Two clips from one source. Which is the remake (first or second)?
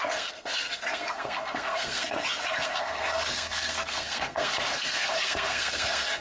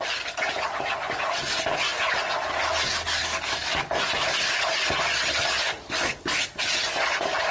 first